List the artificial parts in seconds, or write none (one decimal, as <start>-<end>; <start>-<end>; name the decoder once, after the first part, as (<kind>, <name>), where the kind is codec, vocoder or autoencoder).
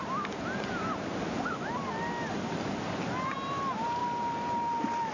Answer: none